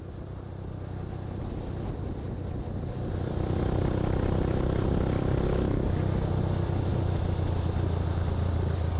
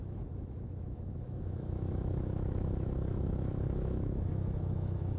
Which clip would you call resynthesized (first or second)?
second